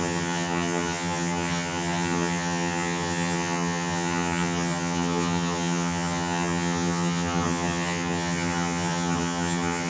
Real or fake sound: fake